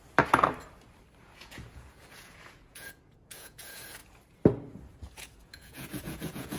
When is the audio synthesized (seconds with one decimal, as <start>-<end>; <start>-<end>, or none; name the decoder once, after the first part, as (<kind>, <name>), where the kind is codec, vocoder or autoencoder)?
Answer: 1.2-4.0 (vocoder, Vocos); 5.1-6.6